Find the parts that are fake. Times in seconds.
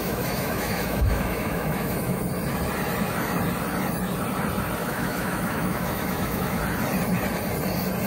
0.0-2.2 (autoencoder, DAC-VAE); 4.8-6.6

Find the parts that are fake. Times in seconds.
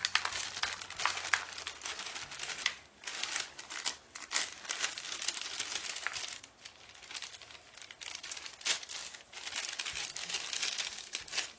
none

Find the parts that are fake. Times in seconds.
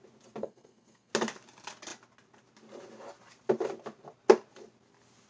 0.4-1.1 (codec, SNAC)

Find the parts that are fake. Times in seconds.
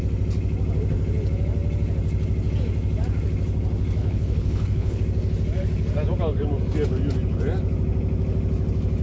4.0-5.0 (codec, HILCodec)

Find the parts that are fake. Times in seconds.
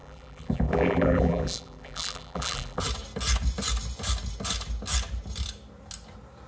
0.0-2.8 (vocoder, BigVGAN v2)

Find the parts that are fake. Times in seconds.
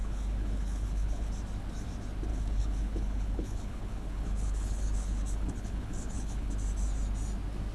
0.0-1.3 (codec, HILCodec); 2.3-6.5